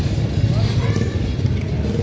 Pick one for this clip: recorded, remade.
recorded